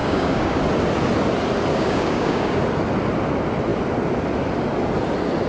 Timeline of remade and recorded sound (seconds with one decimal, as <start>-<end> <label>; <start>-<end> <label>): 0.0-0.6 remade; 0.6-1.7 recorded; 1.7-2.6 remade; 2.6-5.5 recorded